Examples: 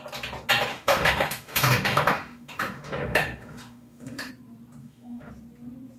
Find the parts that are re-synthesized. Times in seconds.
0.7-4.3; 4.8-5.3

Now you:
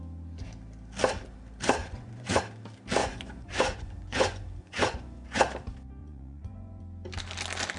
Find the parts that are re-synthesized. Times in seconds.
1.8-2.4; 3.0-5.4; 6.0-6.8

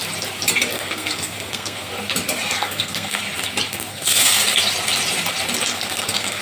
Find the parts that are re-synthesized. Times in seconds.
0.7-1.9; 2.6-3.2; 3.9-4.4; 5.7-6.4

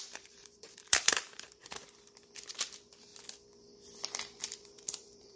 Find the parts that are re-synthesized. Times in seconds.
0.0-1.6; 2.5-3.1; 4.4-5.4

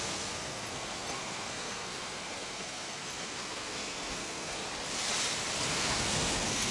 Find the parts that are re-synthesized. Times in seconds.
0.0-4.6; 5.7-6.7

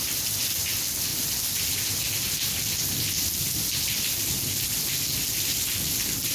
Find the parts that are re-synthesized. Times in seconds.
none

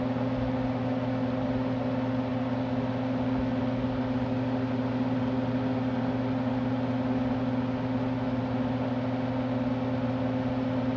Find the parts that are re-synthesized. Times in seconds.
none